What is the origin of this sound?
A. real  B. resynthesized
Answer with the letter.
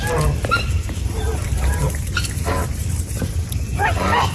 B